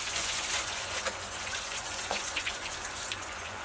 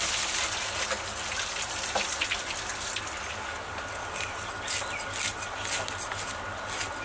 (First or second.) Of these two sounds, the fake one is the first